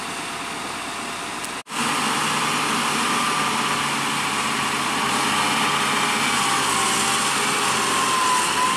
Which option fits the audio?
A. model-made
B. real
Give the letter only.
B